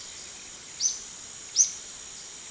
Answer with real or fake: real